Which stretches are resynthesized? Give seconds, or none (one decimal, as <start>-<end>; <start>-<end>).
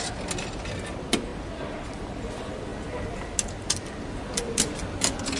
none